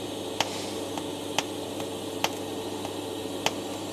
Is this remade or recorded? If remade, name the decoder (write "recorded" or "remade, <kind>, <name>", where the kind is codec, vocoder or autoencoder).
recorded